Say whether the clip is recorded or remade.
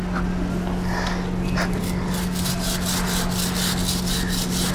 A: recorded